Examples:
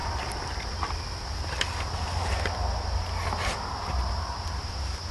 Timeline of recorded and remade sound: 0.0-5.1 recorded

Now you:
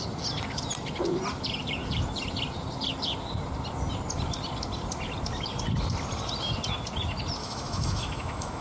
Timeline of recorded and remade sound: 0.0-7.4 recorded; 7.4-8.6 remade